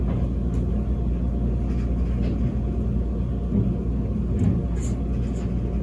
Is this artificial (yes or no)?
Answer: no